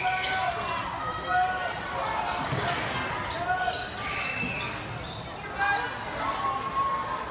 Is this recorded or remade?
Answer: recorded